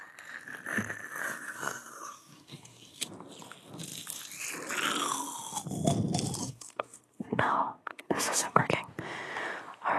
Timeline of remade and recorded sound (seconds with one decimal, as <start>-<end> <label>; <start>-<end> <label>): 0.0-1.2 recorded; 1.2-3.1 remade; 3.1-6.4 recorded; 6.4-8.7 remade; 8.7-10.0 recorded

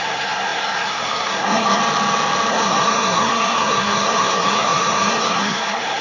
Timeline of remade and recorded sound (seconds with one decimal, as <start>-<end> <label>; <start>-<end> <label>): 0.0-1.8 remade; 1.8-2.5 recorded; 2.5-6.0 remade

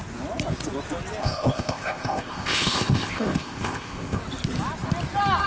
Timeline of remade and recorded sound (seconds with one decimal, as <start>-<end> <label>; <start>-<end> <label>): 0.0-1.2 recorded; 1.2-4.2 remade; 4.2-5.5 recorded

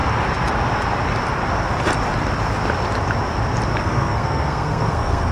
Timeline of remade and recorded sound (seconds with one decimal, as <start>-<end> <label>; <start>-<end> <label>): 0.0-3.8 recorded; 3.8-5.3 remade

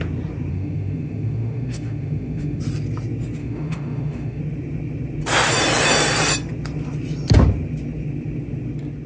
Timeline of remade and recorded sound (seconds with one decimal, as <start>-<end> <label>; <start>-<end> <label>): 0.0-0.5 recorded; 0.5-2.6 remade; 2.6-3.4 recorded; 3.4-4.4 remade; 4.4-9.1 recorded

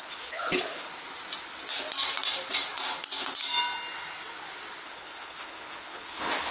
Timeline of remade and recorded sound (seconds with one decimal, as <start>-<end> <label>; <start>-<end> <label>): 0.0-0.9 remade; 0.9-4.8 recorded; 4.8-6.5 remade